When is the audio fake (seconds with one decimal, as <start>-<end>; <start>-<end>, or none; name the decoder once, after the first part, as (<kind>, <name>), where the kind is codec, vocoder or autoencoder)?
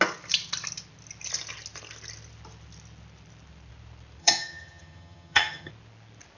4.2-5.7 (vocoder, HiFi-GAN)